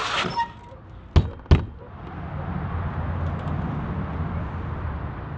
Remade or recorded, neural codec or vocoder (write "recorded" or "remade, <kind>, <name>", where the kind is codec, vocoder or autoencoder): recorded